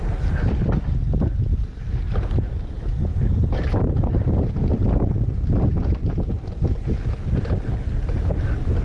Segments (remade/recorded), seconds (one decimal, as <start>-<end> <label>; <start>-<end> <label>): 0.0-3.1 recorded; 3.1-4.5 remade; 4.5-6.0 recorded; 6.0-7.0 remade; 7.0-8.8 recorded